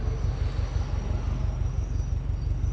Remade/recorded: recorded